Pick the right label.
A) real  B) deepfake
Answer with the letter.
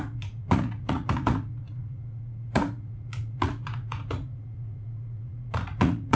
B